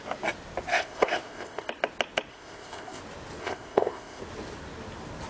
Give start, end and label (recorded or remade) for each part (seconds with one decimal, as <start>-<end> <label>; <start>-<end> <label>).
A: 0.0-0.7 recorded; 0.7-1.7 remade; 1.7-2.3 recorded; 2.3-3.0 remade; 3.0-3.4 recorded; 3.4-4.2 remade; 4.2-5.3 recorded